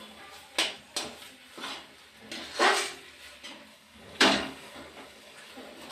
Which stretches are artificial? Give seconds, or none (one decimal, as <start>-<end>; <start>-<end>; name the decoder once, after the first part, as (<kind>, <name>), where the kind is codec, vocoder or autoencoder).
3.7-5.5 (codec, DAC)